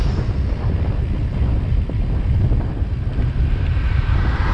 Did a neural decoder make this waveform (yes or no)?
no